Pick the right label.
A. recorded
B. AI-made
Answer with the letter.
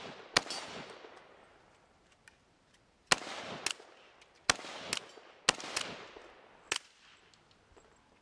A